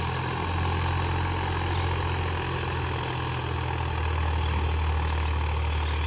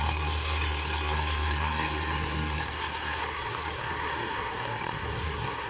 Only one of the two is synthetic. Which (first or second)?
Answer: second